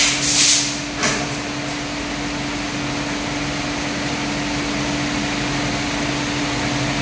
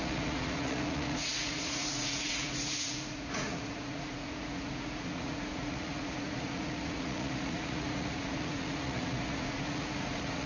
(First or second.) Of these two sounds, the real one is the first